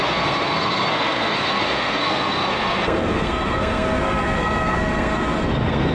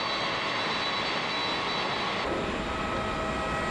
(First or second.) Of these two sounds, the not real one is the first